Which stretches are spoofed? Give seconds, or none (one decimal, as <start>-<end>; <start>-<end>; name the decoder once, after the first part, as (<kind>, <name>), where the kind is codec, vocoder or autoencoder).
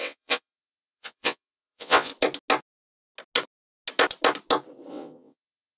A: 0.0-2.1 (vocoder, WaveNeXt); 4.9-5.8